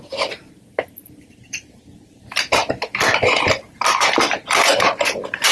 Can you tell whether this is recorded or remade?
remade